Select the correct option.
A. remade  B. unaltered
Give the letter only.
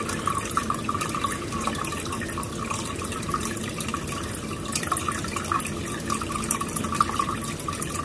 A